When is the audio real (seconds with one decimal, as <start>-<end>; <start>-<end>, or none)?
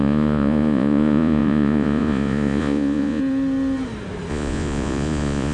3.2-4.3